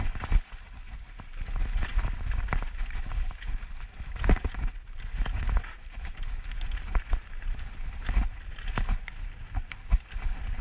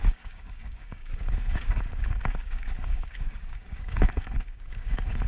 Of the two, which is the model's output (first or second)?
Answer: second